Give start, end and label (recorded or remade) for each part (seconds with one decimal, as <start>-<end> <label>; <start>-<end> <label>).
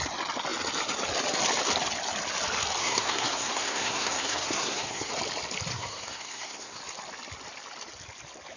0.0-2.8 recorded; 2.8-5.1 remade; 5.1-5.7 recorded; 5.7-6.8 remade; 6.8-8.6 recorded